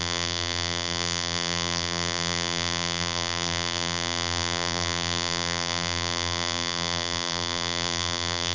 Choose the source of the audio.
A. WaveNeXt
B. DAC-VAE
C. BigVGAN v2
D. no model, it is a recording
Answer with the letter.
C